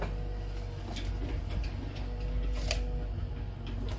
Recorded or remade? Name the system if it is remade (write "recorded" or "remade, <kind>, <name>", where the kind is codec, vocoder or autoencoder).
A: recorded